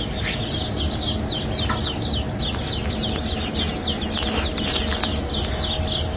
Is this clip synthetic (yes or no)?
no